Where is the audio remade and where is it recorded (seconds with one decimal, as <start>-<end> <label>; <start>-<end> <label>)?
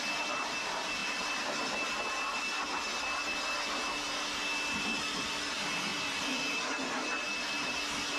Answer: 0.0-1.0 recorded; 1.0-1.9 remade; 1.9-8.2 recorded